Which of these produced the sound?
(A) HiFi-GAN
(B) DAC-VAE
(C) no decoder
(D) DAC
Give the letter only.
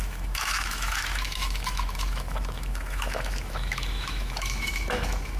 B